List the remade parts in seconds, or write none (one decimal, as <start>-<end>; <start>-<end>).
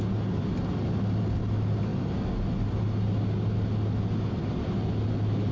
none